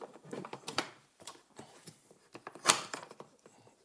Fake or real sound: fake